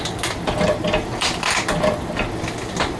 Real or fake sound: real